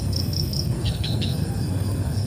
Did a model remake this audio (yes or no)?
yes